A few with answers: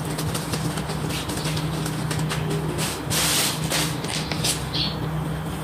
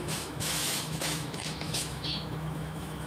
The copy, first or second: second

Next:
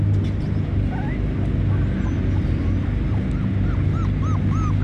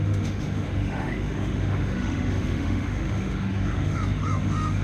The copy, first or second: second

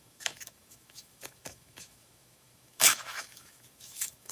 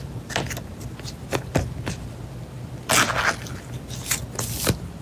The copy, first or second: first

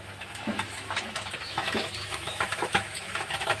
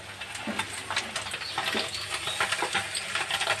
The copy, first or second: first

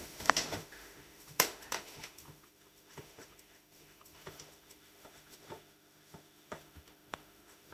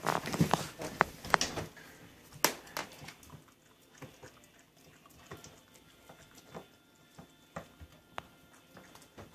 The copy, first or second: first